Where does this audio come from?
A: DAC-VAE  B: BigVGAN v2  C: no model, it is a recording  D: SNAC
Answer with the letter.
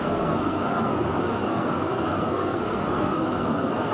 D